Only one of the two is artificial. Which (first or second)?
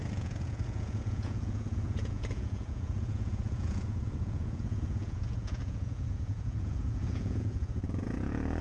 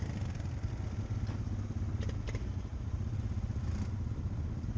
first